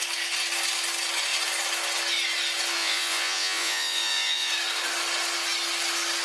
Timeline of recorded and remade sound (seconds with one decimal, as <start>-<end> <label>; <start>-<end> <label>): 0.0-2.8 recorded; 2.8-4.5 remade; 4.5-6.2 recorded

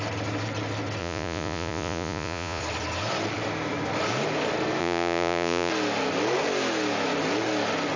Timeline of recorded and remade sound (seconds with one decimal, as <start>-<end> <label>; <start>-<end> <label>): 0.0-1.0 recorded; 1.0-2.6 remade; 2.6-4.8 recorded; 4.8-5.7 remade; 5.7-8.0 recorded

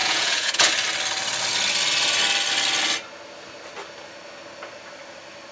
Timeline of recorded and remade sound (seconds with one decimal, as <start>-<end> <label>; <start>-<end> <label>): 0.0-0.7 remade; 0.7-5.5 recorded

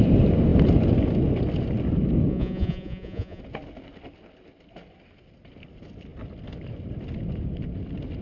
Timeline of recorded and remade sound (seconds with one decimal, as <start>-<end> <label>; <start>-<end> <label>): 0.0-2.3 recorded; 2.3-3.4 remade; 3.4-8.2 recorded

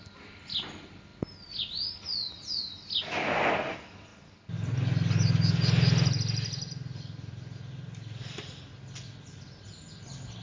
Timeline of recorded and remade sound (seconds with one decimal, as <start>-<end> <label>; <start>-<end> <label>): 0.0-10.4 recorded